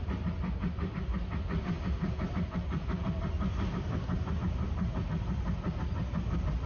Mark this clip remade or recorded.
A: recorded